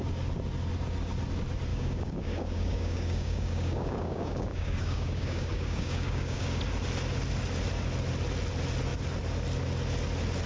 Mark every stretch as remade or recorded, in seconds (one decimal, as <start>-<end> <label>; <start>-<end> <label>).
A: 0.0-1.7 recorded; 1.7-6.6 remade; 6.6-10.5 recorded

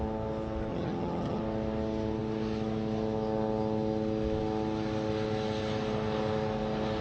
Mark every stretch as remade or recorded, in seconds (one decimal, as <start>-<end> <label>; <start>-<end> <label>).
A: 0.0-0.7 recorded; 0.7-1.4 remade; 1.4-7.0 recorded

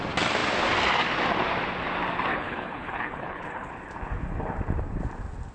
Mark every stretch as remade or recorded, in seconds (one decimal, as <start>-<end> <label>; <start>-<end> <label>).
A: 0.0-2.3 recorded; 2.3-3.7 remade; 3.7-5.5 recorded

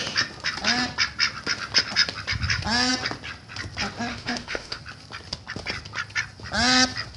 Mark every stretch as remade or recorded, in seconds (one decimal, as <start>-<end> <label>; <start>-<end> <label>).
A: 0.0-4.1 recorded; 4.1-4.8 remade; 4.8-7.2 recorded

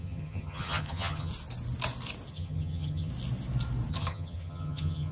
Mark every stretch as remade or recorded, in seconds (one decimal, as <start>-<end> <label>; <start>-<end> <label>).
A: 0.0-1.3 remade; 1.3-2.3 recorded; 2.3-3.1 remade; 3.1-3.9 recorded; 3.9-5.1 remade

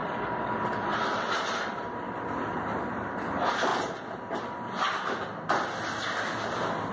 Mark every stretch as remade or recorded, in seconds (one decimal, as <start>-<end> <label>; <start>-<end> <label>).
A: 0.0-0.5 remade; 0.5-6.9 recorded

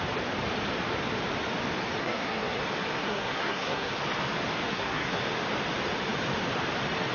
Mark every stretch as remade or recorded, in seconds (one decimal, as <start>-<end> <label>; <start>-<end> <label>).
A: 0.0-2.0 recorded; 2.0-2.6 remade; 2.6-3.0 recorded; 3.0-3.9 remade; 3.9-4.7 recorded; 4.7-5.2 remade; 5.2-7.1 recorded